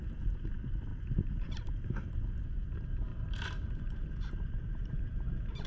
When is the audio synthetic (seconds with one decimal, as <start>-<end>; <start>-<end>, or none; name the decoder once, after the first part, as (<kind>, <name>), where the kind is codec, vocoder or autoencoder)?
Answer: 3.1-5.7 (vocoder, BigVGAN v2)